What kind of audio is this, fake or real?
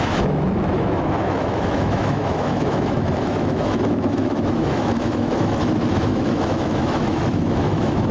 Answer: fake